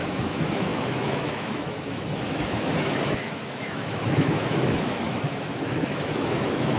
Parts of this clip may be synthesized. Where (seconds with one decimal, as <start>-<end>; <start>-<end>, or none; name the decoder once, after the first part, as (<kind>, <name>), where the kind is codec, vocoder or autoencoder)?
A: 0.0-6.8 (autoencoder, DAC-VAE)